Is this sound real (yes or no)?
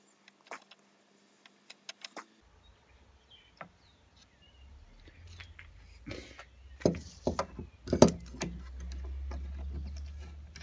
yes